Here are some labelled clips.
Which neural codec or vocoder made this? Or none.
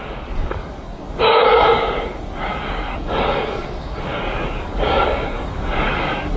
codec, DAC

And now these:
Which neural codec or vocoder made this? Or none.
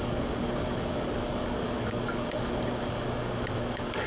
codec, DAC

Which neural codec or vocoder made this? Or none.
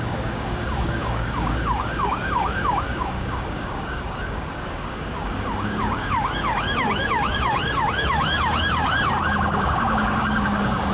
codec, DAC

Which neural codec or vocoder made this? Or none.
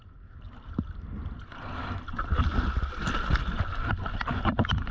none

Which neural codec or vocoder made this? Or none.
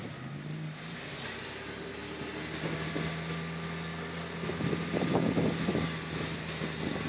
none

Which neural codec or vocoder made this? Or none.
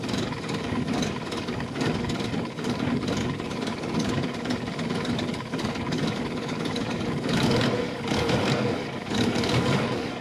codec, DAC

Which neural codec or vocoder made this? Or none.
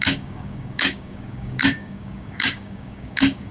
codec, DAC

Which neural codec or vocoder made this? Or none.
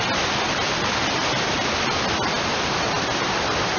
none